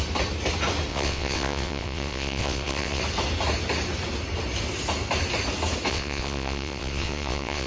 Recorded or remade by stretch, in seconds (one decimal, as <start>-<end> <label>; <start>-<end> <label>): 0.0-0.9 recorded; 0.9-3.0 remade; 3.0-5.9 recorded; 5.9-7.7 remade